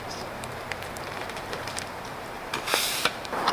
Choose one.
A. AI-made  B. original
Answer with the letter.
A